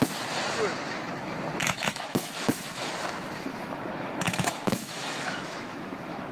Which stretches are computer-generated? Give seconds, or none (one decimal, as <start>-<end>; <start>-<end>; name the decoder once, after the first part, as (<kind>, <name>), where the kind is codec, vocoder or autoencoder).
1.6-2.9 (autoencoder, DAC-VAE); 3.5-6.3